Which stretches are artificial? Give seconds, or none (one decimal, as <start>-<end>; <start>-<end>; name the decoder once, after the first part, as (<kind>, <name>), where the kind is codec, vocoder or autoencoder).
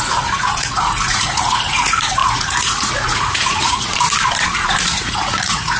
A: 0.0-3.9 (vocoder, Vocos); 4.4-5.8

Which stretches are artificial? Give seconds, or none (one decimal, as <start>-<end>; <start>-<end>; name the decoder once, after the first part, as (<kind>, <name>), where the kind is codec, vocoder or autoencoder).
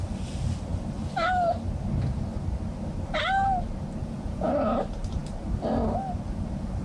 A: 4.0-4.5 (vocoder, Vocos)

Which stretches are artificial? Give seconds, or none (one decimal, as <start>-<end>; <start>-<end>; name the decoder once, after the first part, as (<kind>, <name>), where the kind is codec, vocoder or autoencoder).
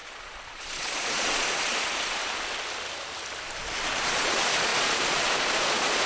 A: 0.0-2.2 (vocoder, Vocos); 4.0-6.1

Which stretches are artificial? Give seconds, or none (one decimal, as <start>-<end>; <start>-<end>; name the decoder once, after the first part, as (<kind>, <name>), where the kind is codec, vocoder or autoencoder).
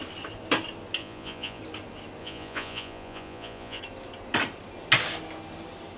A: 1.0-1.6 (vocoder, Vocos); 2.2-3.8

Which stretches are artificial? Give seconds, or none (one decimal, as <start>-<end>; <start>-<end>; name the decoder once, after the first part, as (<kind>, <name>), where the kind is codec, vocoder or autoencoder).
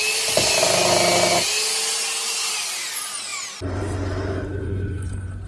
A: 4.6-5.5 (vocoder, Vocos)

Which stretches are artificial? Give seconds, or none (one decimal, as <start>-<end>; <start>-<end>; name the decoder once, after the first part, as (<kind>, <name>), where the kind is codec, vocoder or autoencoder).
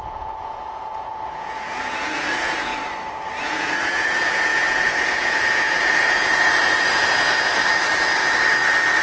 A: 0.0-2.7 (vocoder, Vocos); 3.4-7.6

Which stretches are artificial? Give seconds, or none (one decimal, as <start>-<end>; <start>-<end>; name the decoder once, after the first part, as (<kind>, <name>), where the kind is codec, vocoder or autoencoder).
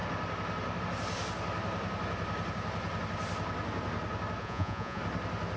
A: 4.4-5.0 (vocoder, Vocos)